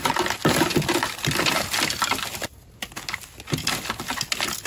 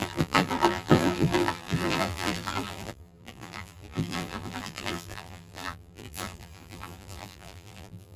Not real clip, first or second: second